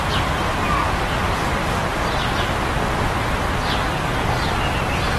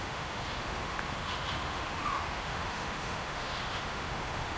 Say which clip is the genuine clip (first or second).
first